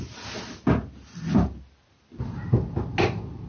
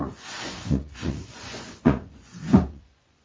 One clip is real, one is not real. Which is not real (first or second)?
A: second